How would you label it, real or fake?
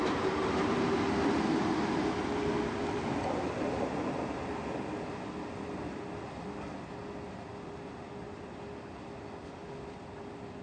real